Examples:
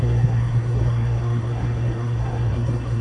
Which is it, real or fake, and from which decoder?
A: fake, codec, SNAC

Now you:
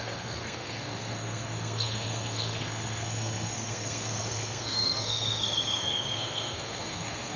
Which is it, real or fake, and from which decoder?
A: fake, codec, SNAC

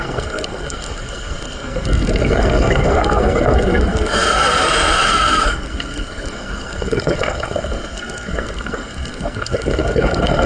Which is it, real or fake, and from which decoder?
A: fake, codec, SNAC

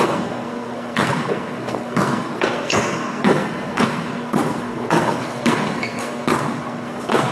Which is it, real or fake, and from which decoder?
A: fake, codec, SNAC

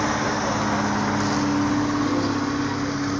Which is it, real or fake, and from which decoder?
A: real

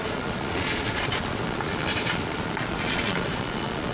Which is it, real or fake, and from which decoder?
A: fake, vocoder, Vocos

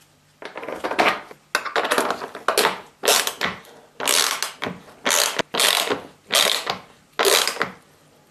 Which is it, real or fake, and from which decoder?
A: real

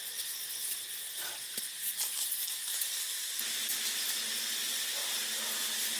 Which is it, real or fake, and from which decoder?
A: real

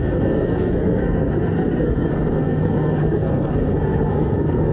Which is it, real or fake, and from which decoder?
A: fake, codec, SNAC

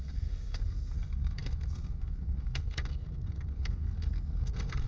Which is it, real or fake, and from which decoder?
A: fake, codec, SNAC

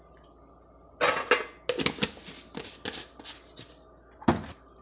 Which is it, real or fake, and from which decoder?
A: real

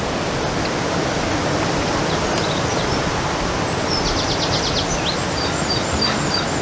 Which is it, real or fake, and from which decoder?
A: real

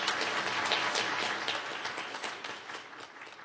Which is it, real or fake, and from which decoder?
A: real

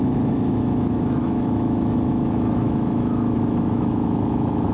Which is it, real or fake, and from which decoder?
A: fake, autoencoder, DAC-VAE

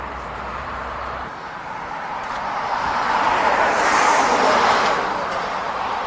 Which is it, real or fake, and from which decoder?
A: fake, vocoder, BigVGAN v2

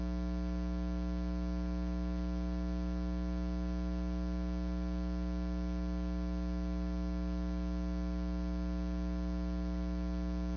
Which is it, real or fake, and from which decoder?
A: real